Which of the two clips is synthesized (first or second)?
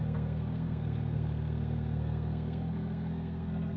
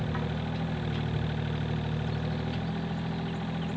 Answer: first